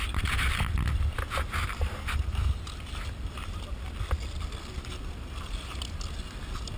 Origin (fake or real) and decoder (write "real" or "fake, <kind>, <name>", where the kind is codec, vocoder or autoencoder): real